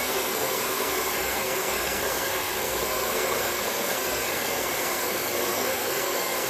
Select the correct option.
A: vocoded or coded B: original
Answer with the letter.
A